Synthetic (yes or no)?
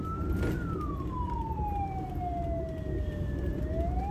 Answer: no